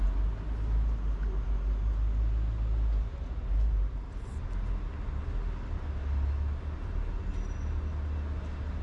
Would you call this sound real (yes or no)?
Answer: yes